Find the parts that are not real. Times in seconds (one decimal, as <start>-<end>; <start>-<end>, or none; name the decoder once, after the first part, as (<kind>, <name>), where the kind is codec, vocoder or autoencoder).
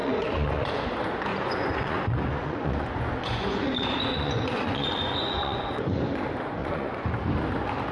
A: 0.0-0.8 (vocoder, Vocos); 1.3-6.0; 6.6-7.1